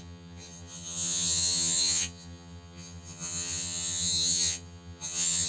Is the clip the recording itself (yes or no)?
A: no